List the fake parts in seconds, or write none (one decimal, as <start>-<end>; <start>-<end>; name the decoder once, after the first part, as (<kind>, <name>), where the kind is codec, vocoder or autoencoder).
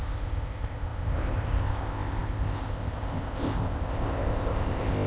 0.0-5.1 (codec, ZipCodec)